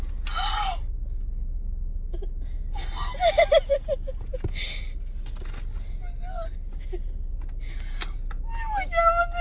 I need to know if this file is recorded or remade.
recorded